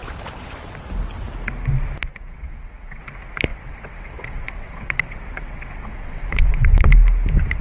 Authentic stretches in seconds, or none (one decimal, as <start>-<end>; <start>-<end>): 0.0-2.1; 3.0-3.5; 6.9-7.6